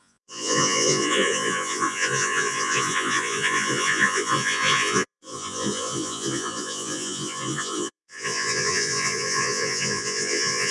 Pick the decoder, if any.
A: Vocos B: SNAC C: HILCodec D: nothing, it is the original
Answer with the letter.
A